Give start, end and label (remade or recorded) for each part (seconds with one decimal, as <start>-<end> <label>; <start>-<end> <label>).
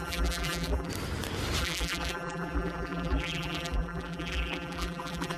0.0-0.9 remade; 0.9-1.6 recorded; 1.6-5.4 remade